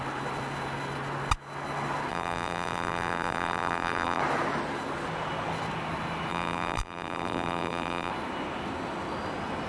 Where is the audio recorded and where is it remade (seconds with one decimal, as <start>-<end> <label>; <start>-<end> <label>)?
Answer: 0.0-2.1 recorded; 2.1-4.2 remade; 4.2-6.3 recorded; 6.3-8.1 remade; 8.1-9.7 recorded